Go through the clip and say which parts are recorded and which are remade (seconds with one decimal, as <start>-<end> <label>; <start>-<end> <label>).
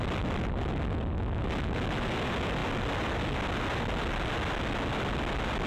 0.0-5.7 recorded